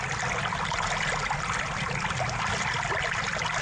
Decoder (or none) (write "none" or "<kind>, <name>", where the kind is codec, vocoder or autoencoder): none